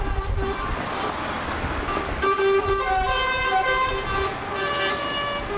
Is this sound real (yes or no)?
yes